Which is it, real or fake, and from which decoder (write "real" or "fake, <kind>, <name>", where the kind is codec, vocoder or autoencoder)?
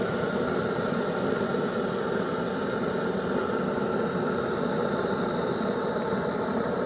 real